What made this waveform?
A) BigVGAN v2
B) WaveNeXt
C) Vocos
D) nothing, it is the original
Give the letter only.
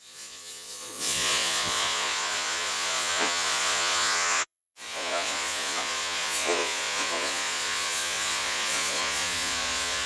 C